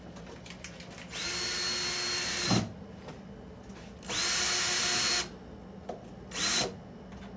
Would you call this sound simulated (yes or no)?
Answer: no